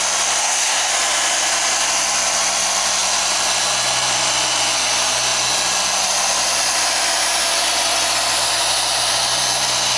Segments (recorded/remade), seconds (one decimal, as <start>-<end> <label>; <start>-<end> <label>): 0.0-0.4 recorded; 0.4-0.9 remade; 0.9-10.0 recorded